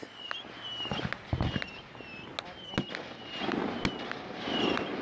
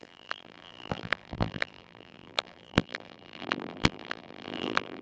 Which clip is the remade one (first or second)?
second